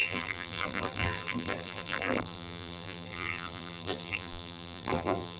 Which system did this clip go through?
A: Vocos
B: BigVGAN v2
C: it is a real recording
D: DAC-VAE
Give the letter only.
B